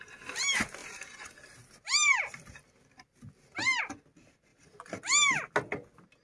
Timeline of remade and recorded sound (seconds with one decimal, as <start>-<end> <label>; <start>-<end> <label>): 0.0-0.8 recorded; 0.8-3.8 remade; 3.8-4.5 recorded; 4.5-5.0 remade; 5.0-6.2 recorded